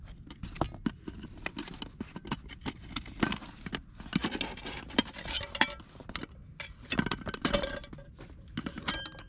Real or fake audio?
real